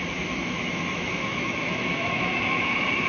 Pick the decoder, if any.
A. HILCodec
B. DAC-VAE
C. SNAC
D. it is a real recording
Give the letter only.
B